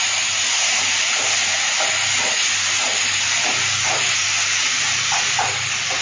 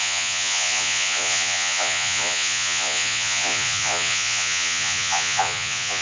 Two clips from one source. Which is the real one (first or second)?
first